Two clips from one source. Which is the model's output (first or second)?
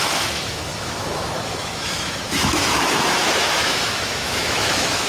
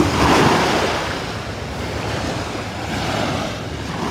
first